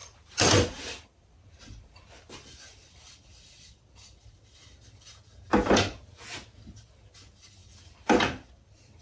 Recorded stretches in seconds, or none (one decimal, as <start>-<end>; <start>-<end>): 5.2-7.6